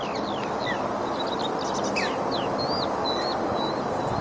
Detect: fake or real real